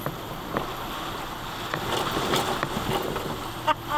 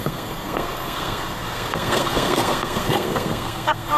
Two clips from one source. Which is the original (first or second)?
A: first